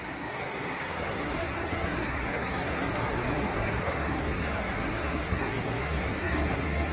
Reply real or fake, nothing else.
fake